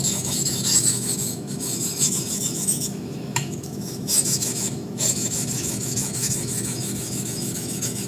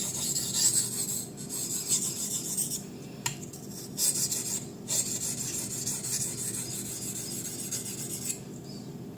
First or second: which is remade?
first